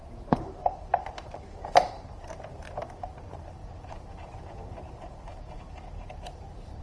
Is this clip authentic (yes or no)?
no